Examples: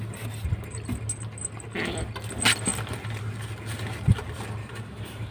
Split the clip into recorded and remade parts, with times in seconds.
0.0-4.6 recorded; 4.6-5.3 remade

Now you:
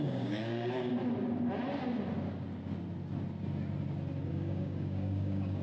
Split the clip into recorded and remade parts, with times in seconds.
0.0-0.9 remade; 0.9-4.3 recorded; 4.3-5.6 remade

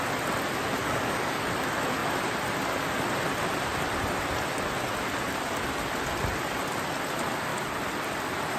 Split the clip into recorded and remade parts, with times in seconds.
0.0-0.8 recorded; 0.8-1.5 remade; 1.5-8.6 recorded

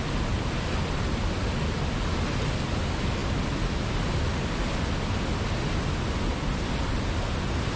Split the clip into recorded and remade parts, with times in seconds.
0.0-7.8 recorded

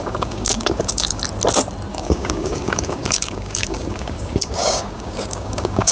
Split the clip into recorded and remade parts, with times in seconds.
0.0-1.2 remade; 1.2-1.9 recorded; 1.9-5.9 remade

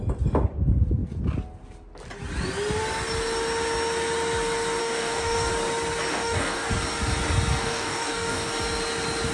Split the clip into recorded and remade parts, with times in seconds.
0.0-4.8 recorded; 4.8-5.5 remade; 5.5-6.1 recorded; 6.1-6.7 remade; 6.7-7.6 recorded; 7.6-8.5 remade; 8.5-9.3 recorded

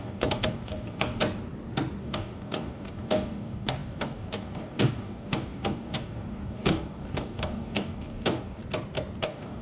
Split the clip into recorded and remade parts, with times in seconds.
0.0-1.2 remade; 1.2-2.0 recorded; 2.0-8.6 remade; 8.6-9.2 recorded; 9.2-9.6 remade